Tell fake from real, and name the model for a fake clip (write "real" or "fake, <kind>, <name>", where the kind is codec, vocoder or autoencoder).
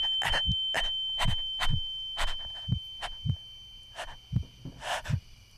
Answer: real